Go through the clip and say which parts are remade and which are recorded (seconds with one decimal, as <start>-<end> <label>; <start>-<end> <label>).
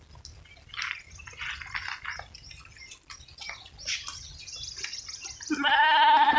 0.0-6.4 recorded